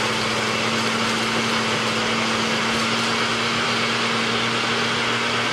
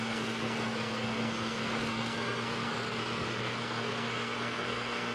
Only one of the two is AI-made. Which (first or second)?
second